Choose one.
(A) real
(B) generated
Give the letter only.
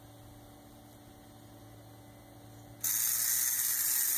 A